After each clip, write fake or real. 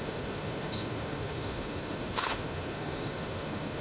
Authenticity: fake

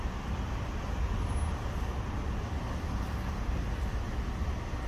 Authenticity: real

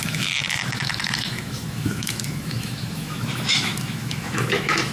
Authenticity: fake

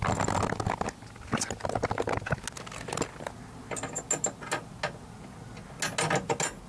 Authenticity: real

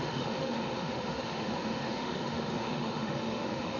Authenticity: fake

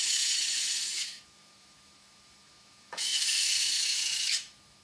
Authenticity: fake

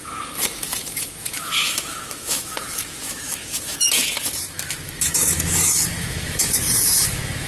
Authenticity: fake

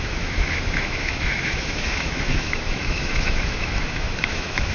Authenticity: fake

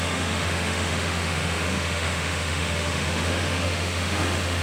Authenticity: fake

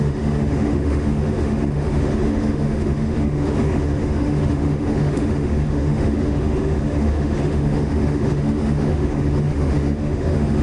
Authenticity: fake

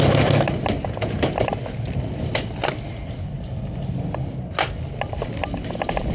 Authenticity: real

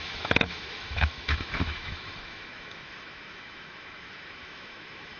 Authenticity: fake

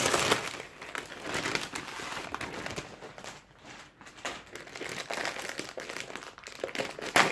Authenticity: real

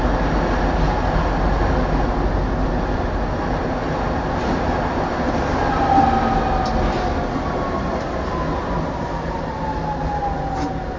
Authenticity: real